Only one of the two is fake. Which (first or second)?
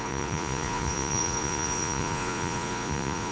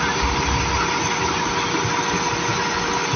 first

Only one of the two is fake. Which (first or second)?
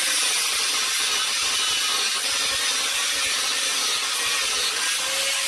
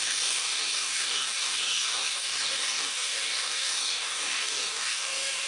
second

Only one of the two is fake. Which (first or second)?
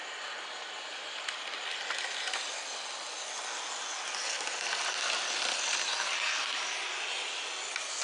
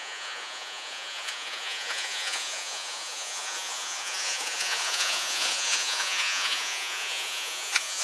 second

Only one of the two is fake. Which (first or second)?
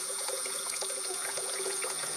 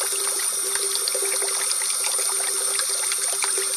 first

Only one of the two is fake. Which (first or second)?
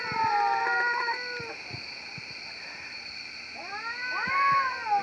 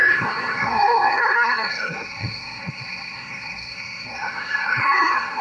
second